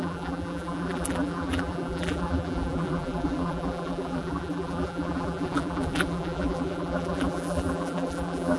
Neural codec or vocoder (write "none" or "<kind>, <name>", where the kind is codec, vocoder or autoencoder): vocoder, BigVGAN v2